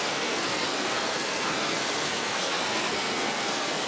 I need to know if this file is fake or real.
fake